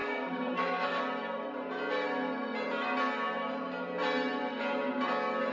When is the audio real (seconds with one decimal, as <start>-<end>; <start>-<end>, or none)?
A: 1.0-5.5